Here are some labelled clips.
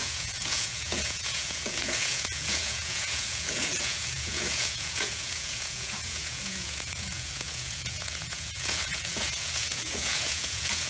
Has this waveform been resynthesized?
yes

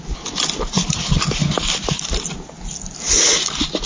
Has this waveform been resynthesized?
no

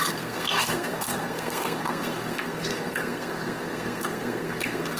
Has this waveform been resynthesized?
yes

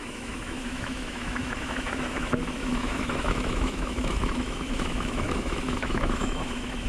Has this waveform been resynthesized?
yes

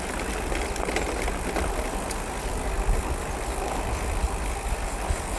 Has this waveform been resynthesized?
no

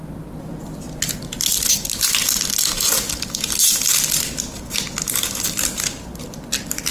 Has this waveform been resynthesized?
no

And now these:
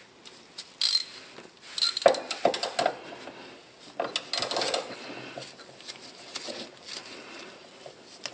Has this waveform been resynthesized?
no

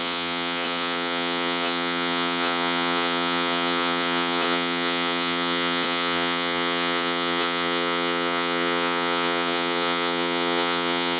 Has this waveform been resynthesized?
yes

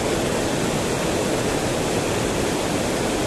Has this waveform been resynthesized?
yes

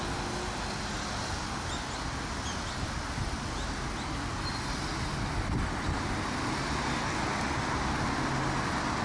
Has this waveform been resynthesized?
no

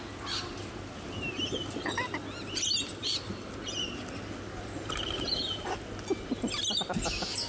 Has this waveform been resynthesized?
no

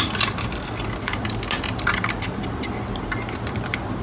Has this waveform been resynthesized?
no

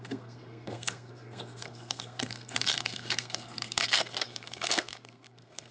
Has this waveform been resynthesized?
yes